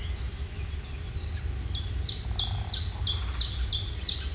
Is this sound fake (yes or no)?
no